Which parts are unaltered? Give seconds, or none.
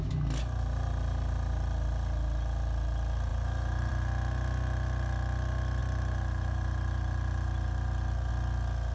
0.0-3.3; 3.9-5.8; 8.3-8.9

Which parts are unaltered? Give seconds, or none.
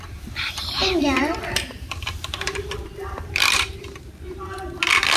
0.0-0.8; 3.9-5.2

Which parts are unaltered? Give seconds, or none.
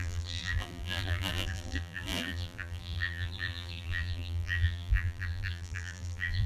none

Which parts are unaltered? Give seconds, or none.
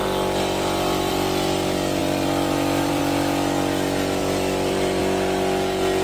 1.1-2.0; 3.0-4.2; 5.0-6.0